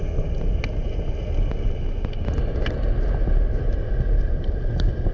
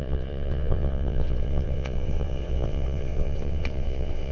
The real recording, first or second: first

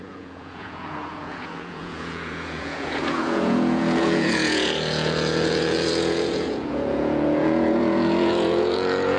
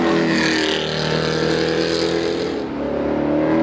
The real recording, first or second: second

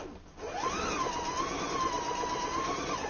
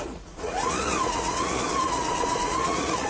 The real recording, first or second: first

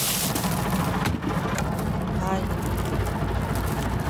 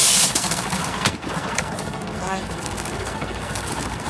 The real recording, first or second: first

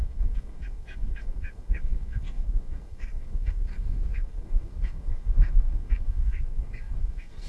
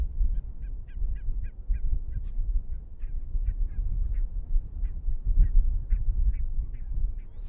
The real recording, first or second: second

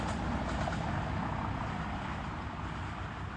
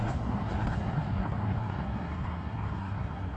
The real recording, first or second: first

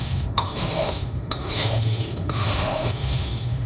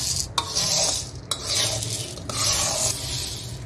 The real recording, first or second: second